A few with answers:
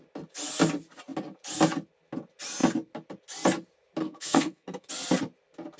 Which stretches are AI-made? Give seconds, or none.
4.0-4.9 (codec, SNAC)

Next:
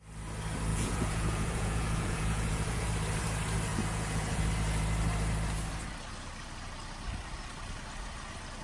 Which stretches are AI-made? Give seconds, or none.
0.7-2.9 (vocoder, Vocos); 3.7-4.4

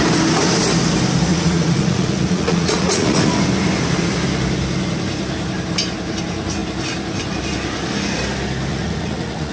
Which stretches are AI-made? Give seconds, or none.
1.3-3.4 (vocoder, Vocos); 8.7-9.5

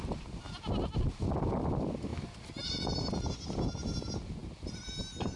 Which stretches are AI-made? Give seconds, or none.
4.4-5.0 (vocoder, BigVGAN v2)